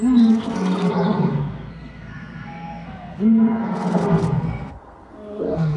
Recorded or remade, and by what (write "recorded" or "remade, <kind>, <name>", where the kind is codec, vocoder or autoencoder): remade, codec, SNAC